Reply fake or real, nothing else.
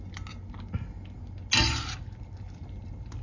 real